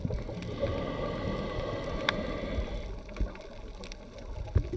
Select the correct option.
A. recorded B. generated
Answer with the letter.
A